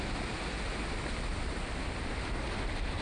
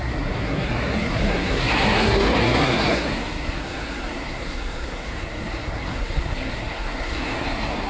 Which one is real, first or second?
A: first